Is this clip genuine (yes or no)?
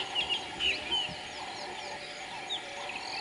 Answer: yes